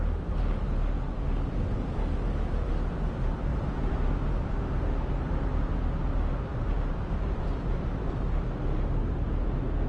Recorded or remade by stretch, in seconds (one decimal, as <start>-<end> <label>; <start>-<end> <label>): 0.0-3.5 recorded; 3.5-4.5 remade; 4.5-6.5 recorded; 6.5-7.4 remade; 7.4-9.9 recorded